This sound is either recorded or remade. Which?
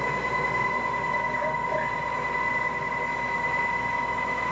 recorded